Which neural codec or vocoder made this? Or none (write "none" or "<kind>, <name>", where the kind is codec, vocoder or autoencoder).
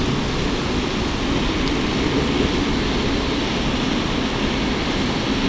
none